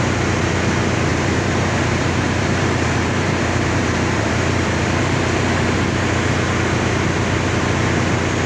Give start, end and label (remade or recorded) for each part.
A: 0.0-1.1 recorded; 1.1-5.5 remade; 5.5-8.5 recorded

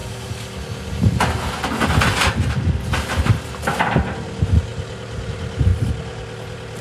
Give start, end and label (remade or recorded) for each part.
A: 0.0-6.8 recorded

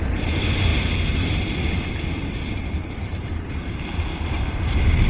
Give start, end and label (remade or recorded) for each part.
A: 0.0-4.1 recorded; 4.1-5.1 remade

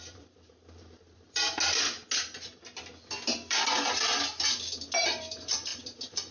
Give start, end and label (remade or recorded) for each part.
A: 0.0-1.4 remade; 1.4-5.0 recorded; 5.0-5.7 remade; 5.7-6.3 recorded

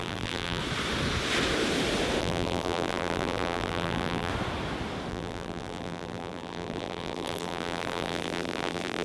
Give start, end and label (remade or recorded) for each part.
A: 0.0-0.6 remade; 0.6-2.2 recorded; 2.2-4.3 remade; 4.3-5.1 recorded; 5.1-9.0 remade

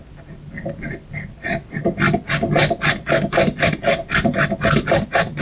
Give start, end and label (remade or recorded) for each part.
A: 0.0-5.4 recorded

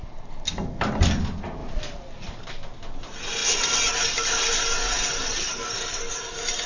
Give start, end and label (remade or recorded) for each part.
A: 0.0-1.6 recorded; 1.6-2.5 remade; 2.5-6.7 recorded

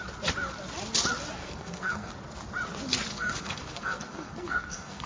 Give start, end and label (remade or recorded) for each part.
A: 0.0-1.4 recorded; 1.4-2.1 remade; 2.1-3.1 recorded; 3.1-5.1 remade